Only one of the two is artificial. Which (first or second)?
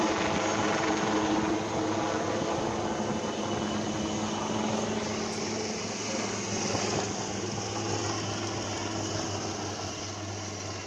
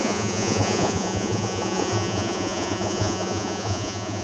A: second